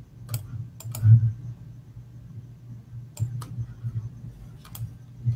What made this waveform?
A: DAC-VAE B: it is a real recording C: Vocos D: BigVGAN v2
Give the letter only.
B